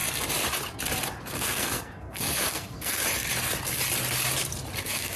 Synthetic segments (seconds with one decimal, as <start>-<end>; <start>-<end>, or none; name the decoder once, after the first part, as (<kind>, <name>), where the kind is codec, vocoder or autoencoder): 1.2-3.0 (codec, SNAC); 4.8-5.2